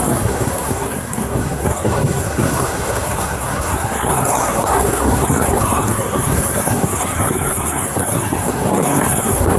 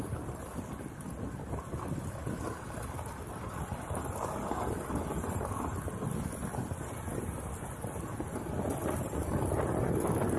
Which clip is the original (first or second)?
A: second